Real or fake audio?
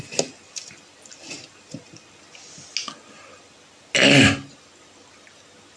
real